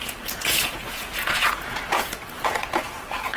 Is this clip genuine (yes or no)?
no